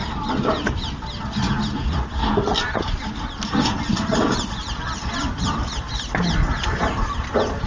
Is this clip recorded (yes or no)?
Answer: yes